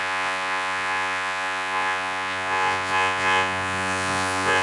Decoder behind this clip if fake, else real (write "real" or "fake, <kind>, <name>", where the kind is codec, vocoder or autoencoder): fake, vocoder, Vocos